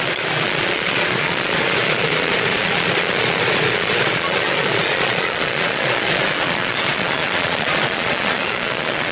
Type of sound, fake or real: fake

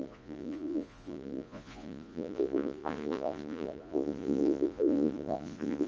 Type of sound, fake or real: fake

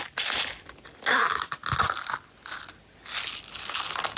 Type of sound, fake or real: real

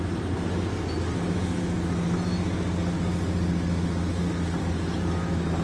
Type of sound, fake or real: real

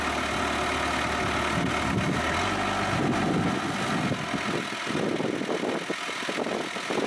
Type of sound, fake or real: real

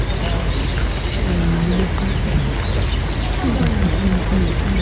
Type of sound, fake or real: real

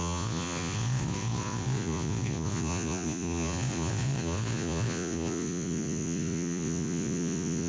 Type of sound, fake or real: fake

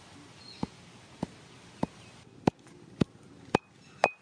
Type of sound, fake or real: real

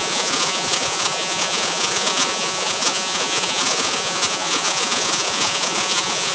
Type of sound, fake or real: fake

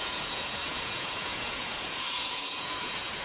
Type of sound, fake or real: fake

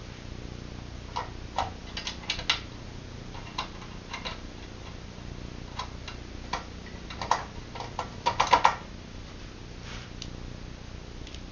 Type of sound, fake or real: real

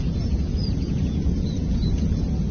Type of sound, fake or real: fake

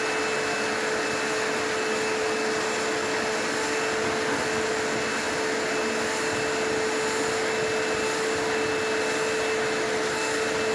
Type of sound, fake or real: real